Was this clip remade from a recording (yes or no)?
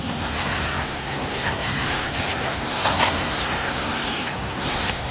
yes